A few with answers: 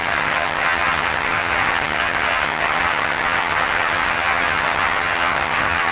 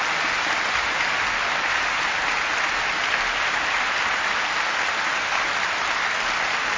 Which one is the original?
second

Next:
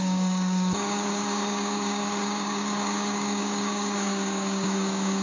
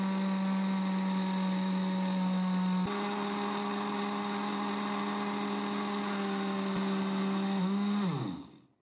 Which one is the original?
second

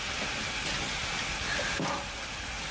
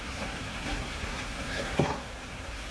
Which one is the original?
first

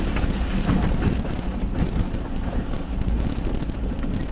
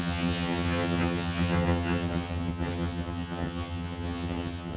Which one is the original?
first